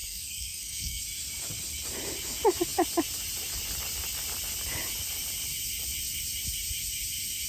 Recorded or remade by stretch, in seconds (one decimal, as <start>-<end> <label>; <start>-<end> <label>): 0.0-1.0 remade; 1.0-7.5 recorded